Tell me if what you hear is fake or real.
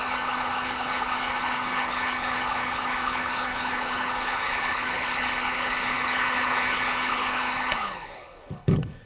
fake